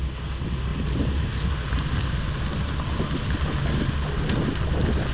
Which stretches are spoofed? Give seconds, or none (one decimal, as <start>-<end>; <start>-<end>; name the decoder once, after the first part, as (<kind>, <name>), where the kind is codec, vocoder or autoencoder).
0.7-2.4 (vocoder, BigVGAN v2)